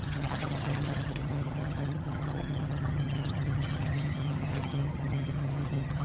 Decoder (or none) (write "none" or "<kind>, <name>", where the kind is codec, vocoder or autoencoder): vocoder, HiFi-GAN